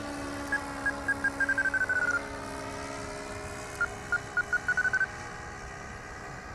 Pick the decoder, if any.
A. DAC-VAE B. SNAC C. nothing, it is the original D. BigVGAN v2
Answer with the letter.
C